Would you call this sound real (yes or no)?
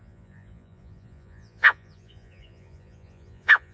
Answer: no